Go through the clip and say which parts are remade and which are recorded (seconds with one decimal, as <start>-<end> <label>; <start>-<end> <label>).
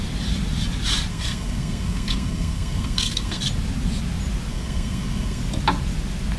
0.0-1.1 recorded; 1.1-3.4 remade; 3.4-4.5 recorded; 4.5-5.4 remade; 5.4-6.4 recorded